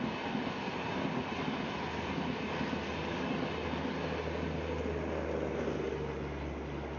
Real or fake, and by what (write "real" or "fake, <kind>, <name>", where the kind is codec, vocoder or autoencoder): real